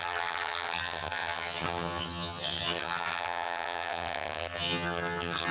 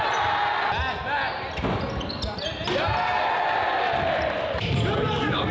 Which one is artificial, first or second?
first